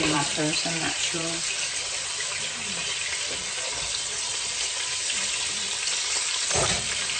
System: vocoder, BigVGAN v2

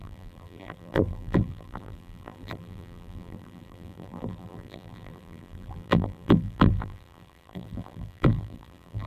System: vocoder, BigVGAN v2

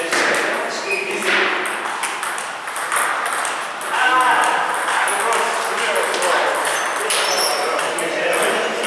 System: none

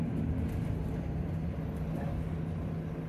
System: none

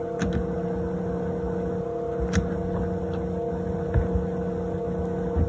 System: none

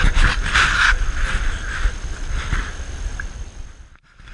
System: vocoder, BigVGAN v2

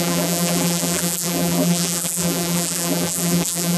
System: vocoder, BigVGAN v2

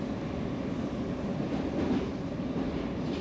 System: none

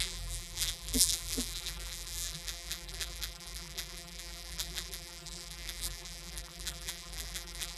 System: vocoder, BigVGAN v2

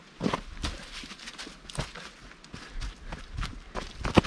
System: none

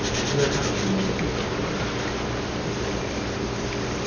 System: none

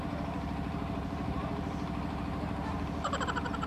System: vocoder, BigVGAN v2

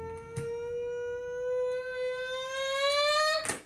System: none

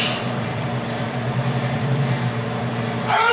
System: vocoder, BigVGAN v2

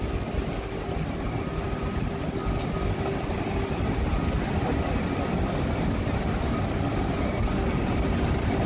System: none